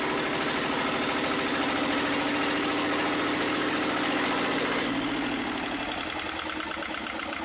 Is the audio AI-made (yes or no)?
no